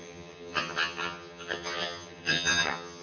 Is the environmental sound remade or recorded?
remade